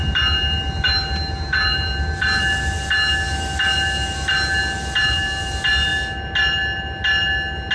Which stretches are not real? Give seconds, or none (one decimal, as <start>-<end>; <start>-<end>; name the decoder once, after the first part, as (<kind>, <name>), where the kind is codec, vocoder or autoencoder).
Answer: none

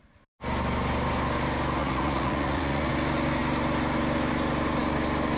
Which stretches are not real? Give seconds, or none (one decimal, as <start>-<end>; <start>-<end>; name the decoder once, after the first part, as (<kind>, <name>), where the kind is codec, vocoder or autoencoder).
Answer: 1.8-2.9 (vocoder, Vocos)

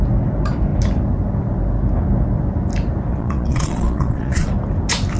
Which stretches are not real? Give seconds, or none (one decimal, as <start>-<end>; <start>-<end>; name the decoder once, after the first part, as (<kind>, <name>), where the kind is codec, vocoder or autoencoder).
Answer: 3.1-4.5 (vocoder, Vocos)

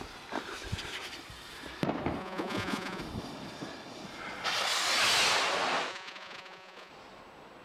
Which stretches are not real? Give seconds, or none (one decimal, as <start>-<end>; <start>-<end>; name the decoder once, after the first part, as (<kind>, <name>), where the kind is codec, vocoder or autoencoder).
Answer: 2.2-3.0 (vocoder, Vocos); 5.9-6.9

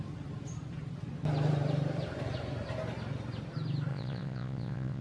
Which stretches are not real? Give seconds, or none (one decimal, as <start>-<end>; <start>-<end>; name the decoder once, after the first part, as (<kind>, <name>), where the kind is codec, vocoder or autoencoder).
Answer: 3.9-5.0 (vocoder, Vocos)

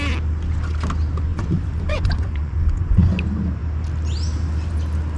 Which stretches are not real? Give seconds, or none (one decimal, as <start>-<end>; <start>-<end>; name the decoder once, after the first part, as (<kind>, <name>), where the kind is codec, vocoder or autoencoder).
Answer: 1.3-3.1 (vocoder, Vocos)

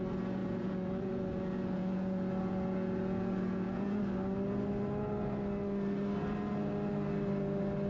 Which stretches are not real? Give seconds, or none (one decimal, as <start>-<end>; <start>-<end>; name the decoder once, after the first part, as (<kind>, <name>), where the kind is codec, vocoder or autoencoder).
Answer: 0.4-4.0 (vocoder, Vocos)

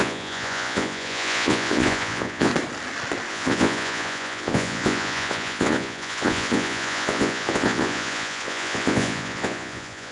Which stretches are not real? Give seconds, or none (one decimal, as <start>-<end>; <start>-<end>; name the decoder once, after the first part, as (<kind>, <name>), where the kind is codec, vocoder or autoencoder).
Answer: 0.0-2.5 (vocoder, Vocos); 3.3-10.1